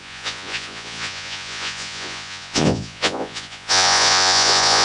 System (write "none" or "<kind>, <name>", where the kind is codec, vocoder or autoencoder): vocoder, Vocos